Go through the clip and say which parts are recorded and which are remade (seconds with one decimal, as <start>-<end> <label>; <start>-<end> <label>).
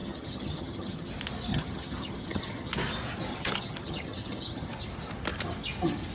0.0-1.1 remade; 1.1-1.5 recorded; 1.5-2.7 remade; 2.7-3.3 recorded; 3.3-4.7 remade; 4.7-6.1 recorded